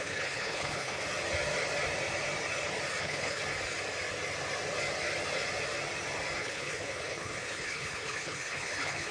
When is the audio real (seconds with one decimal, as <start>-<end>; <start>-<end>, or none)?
1.0-3.0; 3.4-6.4